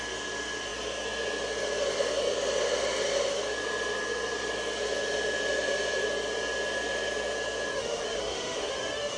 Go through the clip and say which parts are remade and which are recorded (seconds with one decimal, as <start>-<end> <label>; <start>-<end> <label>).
0.0-7.7 recorded; 7.7-9.2 remade